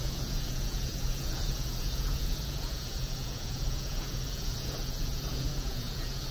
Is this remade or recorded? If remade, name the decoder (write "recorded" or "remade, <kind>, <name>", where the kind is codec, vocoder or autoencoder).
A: remade, vocoder, Vocos